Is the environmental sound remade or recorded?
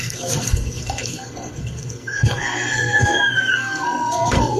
remade